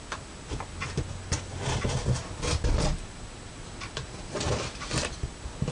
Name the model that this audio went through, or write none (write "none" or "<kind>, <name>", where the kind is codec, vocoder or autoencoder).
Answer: none